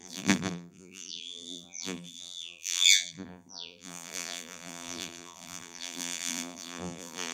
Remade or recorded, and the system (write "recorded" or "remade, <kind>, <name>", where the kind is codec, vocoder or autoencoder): remade, vocoder, BigVGAN v2